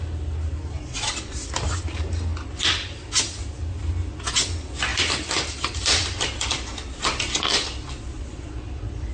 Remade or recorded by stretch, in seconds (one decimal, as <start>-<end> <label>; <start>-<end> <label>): 0.0-0.8 recorded; 0.8-1.4 remade; 1.4-8.1 recorded; 8.1-9.1 remade